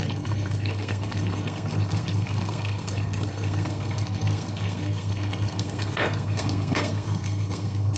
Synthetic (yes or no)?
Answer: yes